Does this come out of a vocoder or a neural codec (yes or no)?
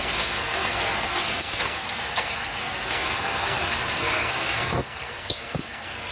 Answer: yes